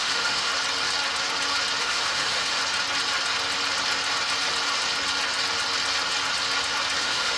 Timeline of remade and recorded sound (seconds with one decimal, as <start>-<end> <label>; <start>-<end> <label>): 0.0-0.5 remade; 0.5-1.8 recorded; 1.8-2.6 remade; 2.6-7.0 recorded; 7.0-7.4 remade